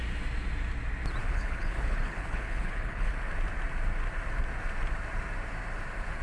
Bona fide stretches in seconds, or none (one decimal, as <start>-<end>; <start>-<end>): 0.0-1.2; 3.1-6.2